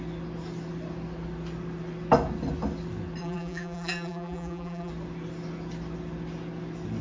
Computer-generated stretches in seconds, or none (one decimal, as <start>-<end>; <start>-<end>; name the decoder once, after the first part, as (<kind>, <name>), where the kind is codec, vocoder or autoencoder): 3.2-4.9 (vocoder, BigVGAN v2)